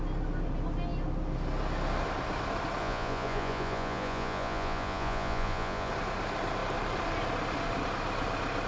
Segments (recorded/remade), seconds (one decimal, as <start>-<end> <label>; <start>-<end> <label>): 0.0-2.8 recorded; 2.8-5.9 remade; 5.9-8.7 recorded

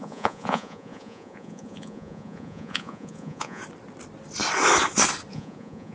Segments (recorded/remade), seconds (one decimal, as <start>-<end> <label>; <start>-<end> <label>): 0.0-3.6 remade; 3.6-5.3 recorded; 5.3-5.9 remade

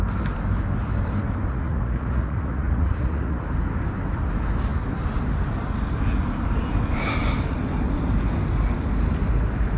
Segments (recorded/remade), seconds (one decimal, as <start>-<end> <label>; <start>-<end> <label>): 0.0-1.5 recorded; 1.5-3.4 remade; 3.4-9.8 recorded

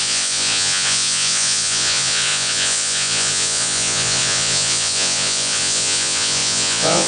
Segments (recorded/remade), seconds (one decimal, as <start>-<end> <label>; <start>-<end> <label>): 0.0-7.1 remade